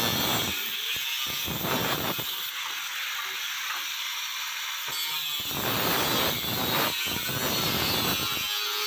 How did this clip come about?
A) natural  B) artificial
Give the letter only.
A